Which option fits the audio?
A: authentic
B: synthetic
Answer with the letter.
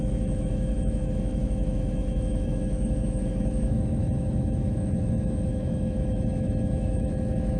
B